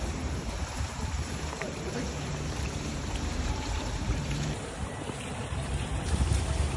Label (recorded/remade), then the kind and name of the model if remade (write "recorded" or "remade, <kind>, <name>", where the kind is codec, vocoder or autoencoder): remade, vocoder, BigVGAN v2